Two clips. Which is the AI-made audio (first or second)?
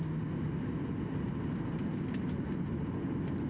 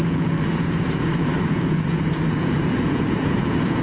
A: second